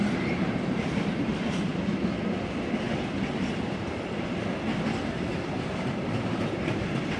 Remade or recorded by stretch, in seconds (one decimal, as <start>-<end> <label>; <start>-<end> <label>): 0.0-1.7 remade; 1.7-5.4 recorded; 5.4-7.2 remade